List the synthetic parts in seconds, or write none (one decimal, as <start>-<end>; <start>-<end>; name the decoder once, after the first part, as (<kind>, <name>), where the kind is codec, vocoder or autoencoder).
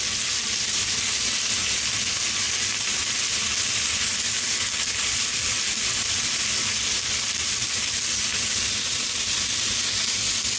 none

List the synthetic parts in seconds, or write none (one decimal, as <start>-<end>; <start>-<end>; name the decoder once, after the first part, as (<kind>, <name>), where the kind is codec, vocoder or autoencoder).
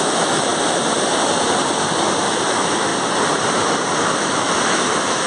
0.0-0.5 (autoencoder, DAC-VAE); 2.5-2.9; 4.0-5.3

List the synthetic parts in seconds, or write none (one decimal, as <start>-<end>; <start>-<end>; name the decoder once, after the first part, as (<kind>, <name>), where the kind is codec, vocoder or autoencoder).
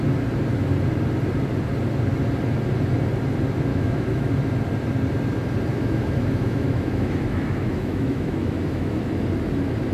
3.7-4.3 (autoencoder, DAC-VAE); 5.7-9.1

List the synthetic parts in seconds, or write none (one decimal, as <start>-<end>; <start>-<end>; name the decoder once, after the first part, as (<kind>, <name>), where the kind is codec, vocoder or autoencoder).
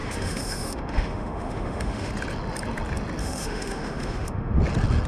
0.0-2.1 (autoencoder, DAC-VAE); 3.2-4.6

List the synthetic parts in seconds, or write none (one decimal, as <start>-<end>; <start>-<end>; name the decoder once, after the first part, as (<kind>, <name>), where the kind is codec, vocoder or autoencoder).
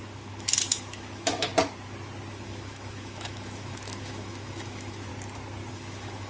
0.0-1.5 (autoencoder, DAC-VAE); 2.3-5.1; 5.7-6.3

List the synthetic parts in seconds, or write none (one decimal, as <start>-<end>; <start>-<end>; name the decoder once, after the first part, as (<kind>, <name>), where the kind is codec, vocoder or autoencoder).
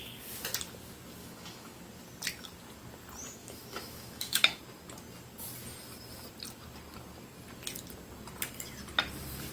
1.2-1.8 (autoencoder, DAC-VAE); 3.4-4.6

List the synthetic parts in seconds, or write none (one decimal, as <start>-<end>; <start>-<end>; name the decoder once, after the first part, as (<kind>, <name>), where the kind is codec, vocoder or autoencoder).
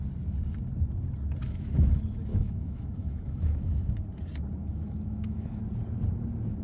1.4-1.9 (autoencoder, DAC-VAE); 2.3-3.9; 4.6-5.6